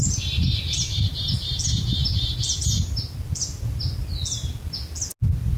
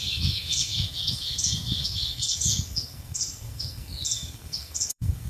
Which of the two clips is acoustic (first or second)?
first